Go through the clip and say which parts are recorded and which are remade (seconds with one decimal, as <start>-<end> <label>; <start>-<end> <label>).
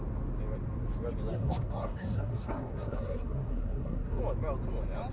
0.0-1.3 recorded; 1.3-4.2 remade; 4.2-5.1 recorded